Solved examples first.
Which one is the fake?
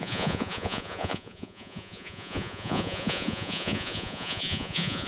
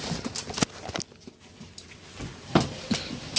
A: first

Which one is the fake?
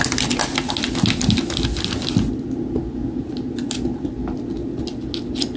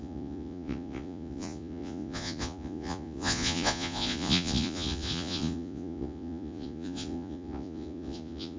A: second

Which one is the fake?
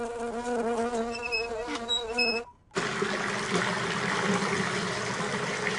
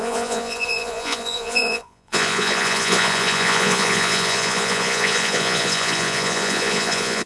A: second